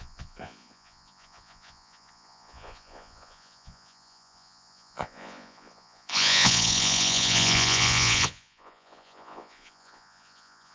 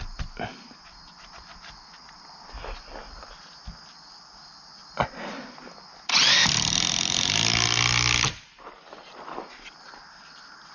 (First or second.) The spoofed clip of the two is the first